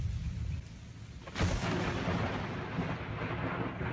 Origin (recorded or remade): recorded